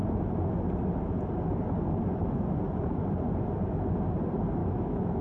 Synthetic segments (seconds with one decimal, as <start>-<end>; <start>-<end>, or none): 4.6-5.2